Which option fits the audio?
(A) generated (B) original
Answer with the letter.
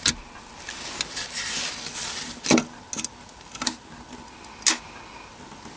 B